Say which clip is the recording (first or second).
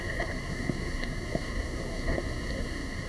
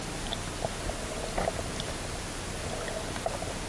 second